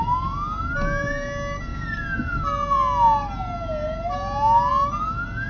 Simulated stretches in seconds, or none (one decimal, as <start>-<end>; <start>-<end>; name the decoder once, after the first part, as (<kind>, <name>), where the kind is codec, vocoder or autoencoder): none